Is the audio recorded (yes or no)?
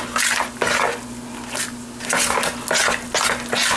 yes